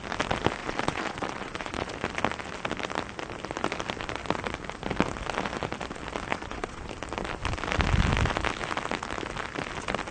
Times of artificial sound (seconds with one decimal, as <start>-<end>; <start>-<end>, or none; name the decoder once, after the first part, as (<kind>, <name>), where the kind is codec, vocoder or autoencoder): 0.6-1.9 (vocoder, Vocos); 6.3-6.8